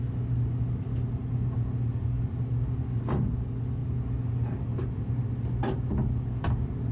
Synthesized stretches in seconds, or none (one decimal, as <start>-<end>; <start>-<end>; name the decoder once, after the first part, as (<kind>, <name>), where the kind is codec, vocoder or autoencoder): none